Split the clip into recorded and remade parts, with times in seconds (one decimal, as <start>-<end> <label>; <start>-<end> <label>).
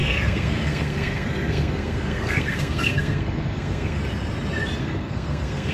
0.0-4.0 remade; 4.0-4.8 recorded; 4.8-5.7 remade